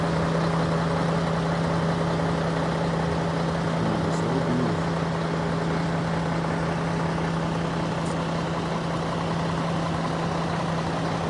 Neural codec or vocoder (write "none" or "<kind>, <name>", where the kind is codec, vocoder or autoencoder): none